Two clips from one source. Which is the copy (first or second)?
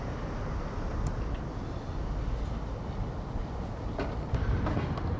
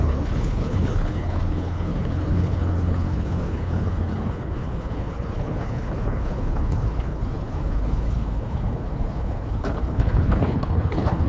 second